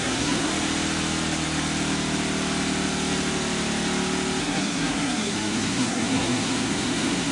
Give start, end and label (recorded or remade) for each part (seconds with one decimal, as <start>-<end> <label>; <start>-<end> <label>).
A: 0.0-0.5 remade; 0.5-4.4 recorded; 4.4-7.3 remade